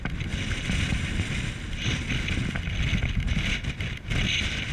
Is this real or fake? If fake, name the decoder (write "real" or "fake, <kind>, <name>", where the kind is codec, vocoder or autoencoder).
real